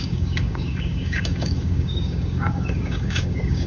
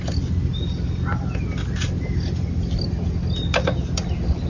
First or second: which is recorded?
second